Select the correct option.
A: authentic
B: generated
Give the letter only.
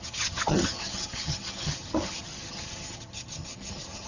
B